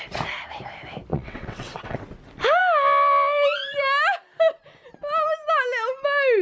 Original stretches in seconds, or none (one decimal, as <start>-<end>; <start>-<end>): 0.0-1.1; 2.0-6.4

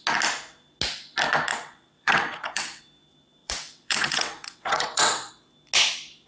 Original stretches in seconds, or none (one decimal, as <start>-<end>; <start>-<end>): 0.0-1.5; 2.8-3.4; 5.3-6.3